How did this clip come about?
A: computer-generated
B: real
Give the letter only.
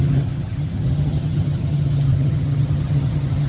A